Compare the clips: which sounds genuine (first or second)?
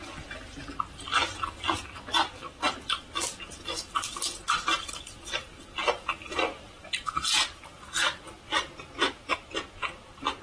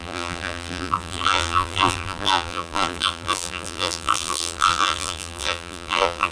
first